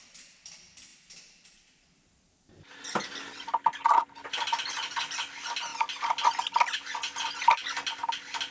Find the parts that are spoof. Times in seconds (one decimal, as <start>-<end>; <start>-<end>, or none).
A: none